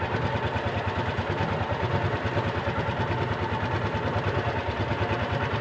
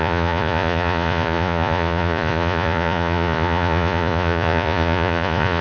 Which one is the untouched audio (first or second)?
first